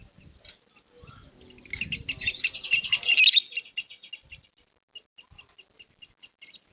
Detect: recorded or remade recorded